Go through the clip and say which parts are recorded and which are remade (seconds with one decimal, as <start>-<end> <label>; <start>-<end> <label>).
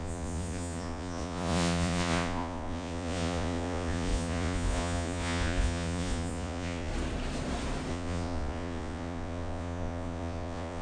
0.0-6.9 remade; 6.9-7.9 recorded; 7.9-10.8 remade